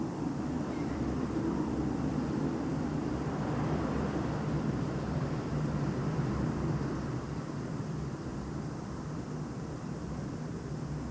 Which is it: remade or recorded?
remade